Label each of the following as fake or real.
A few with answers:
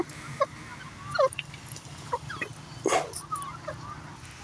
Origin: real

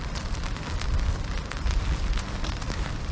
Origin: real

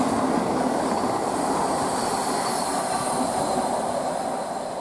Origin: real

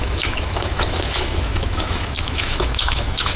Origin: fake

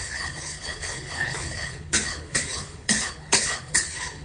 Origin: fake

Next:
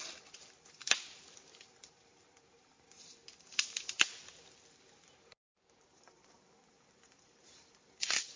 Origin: real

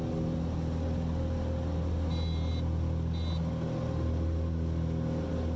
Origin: real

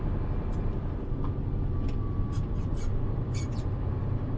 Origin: real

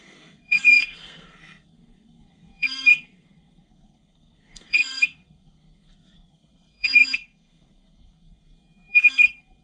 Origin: fake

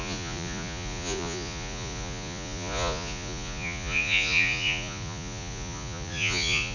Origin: fake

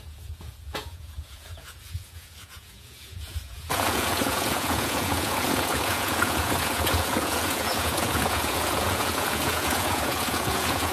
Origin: fake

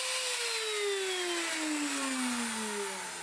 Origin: real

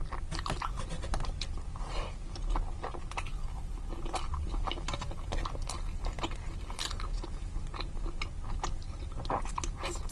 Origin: real